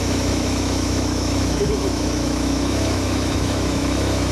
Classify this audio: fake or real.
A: fake